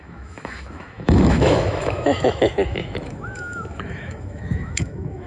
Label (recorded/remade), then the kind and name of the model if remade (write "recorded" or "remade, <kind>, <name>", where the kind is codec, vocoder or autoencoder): remade, autoencoder, DAC-VAE